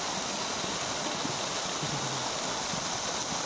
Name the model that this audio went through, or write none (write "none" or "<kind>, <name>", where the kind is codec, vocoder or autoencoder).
none